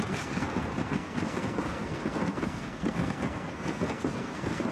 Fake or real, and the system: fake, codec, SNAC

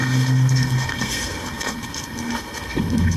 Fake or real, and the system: fake, codec, SNAC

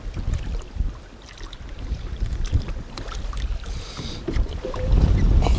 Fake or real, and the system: real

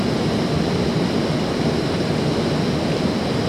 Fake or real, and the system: real